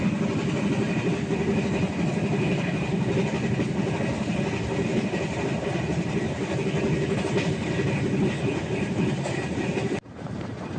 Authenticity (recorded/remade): recorded